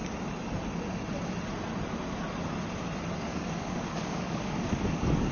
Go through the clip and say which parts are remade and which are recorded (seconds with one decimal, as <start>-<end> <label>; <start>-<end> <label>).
0.0-3.2 recorded; 3.2-5.3 remade